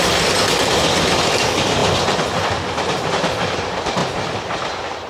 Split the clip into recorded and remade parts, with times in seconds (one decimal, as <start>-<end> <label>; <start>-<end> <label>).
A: 0.0-1.8 remade; 1.8-2.5 recorded; 2.5-4.0 remade; 4.0-5.1 recorded